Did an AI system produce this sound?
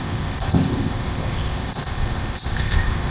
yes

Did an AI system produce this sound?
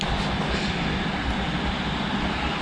no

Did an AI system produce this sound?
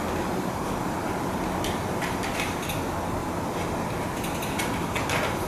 no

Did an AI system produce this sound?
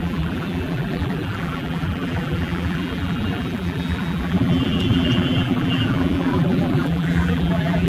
yes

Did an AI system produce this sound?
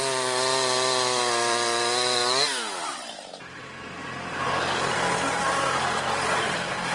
no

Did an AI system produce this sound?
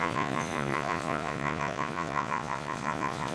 yes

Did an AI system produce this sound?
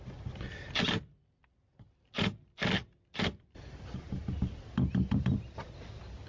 no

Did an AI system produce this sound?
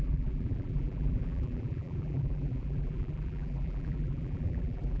yes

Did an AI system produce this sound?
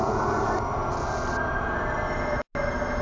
no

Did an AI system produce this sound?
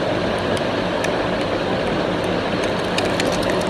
no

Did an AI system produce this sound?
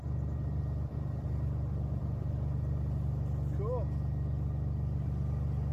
no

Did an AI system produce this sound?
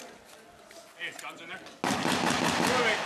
no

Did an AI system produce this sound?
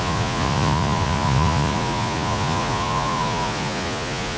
yes